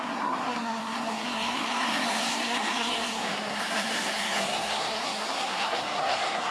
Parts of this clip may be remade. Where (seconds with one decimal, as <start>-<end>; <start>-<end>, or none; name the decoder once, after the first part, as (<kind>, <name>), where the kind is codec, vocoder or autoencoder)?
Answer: 0.0-6.5 (codec, SNAC)